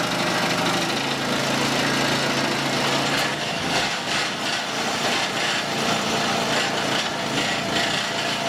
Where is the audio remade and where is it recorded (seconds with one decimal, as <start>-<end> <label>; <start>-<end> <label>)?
0.0-3.3 recorded; 3.3-4.3 remade; 4.3-8.5 recorded